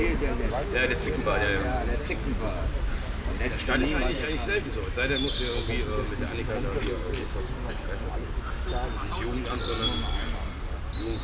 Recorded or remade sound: recorded